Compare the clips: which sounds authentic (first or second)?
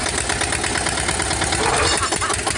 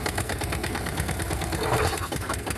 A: first